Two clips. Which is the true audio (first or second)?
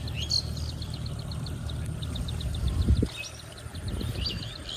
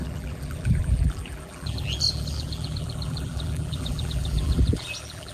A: first